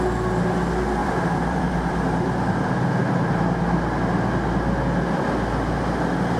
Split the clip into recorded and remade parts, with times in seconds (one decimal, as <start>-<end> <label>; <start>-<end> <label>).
0.0-1.0 recorded; 1.0-2.8 remade; 2.8-6.4 recorded

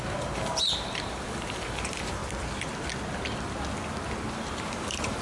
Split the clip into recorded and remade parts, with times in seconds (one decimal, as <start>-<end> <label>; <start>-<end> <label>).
0.0-2.2 remade; 2.2-4.3 recorded; 4.3-5.2 remade